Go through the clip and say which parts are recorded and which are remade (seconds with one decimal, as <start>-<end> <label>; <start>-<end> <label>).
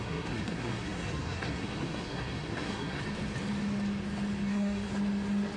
0.0-3.0 remade; 3.0-4.5 recorded; 4.5-4.9 remade; 4.9-5.6 recorded